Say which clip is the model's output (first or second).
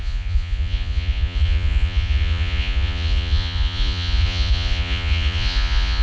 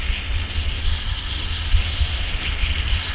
first